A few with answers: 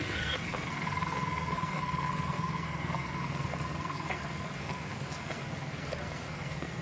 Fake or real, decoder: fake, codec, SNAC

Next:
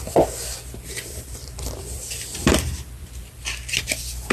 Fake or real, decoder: fake, vocoder, BigVGAN v2